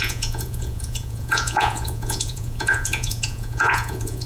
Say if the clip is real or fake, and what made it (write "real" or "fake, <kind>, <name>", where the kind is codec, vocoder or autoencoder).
fake, vocoder, Vocos